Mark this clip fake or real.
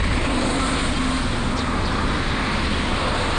real